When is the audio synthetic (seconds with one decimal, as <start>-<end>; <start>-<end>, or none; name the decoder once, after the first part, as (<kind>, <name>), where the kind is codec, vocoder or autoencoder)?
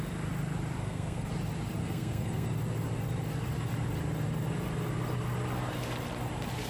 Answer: 0.8-1.3 (codec, SNAC); 1.8-2.5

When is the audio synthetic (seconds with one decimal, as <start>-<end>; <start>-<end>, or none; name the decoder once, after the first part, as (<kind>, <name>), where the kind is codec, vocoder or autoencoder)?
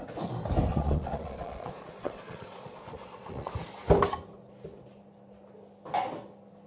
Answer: 0.7-3.5 (vocoder, Vocos)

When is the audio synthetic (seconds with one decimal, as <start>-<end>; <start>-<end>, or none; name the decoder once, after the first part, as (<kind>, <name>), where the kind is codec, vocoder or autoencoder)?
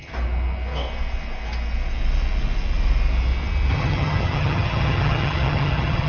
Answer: 3.7-6.1 (vocoder, HiFi-GAN)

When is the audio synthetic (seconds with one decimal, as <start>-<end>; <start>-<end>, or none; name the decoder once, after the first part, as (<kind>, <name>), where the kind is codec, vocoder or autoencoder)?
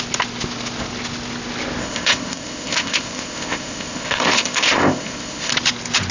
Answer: 1.8-5.5 (codec, ZipCodec)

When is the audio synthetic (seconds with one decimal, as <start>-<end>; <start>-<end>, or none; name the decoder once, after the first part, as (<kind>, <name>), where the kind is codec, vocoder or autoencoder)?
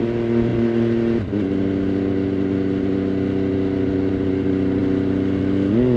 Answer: none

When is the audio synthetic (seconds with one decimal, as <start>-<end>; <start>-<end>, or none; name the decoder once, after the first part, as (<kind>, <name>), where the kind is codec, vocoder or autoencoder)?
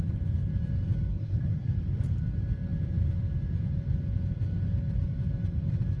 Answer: 1.1-1.7 (codec, SNAC)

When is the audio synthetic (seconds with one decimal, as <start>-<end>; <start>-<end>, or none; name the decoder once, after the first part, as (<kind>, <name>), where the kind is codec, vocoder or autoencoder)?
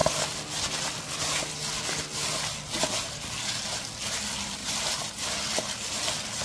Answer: 4.6-5.1 (vocoder, BigVGAN v2)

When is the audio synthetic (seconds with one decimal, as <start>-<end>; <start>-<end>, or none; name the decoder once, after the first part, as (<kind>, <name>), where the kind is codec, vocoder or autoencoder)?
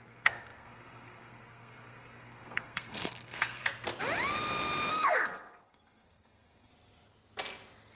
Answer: 0.0-3.6 (codec, SNAC); 4.9-6.7